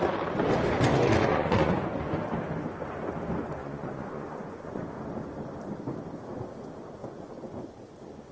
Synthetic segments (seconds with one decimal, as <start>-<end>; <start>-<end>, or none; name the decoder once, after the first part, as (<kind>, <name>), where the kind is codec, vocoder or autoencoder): 0.9-1.8 (vocoder, Vocos); 3.6-4.8; 7.0-8.3